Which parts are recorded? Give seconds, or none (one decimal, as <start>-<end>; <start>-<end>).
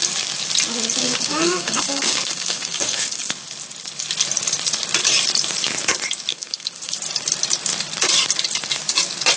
0.0-1.0; 3.3-6.3; 7.0-9.4